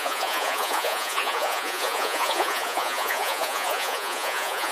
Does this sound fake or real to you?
fake